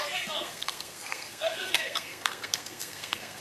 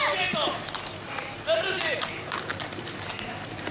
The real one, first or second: second